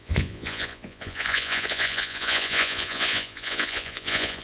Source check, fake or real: fake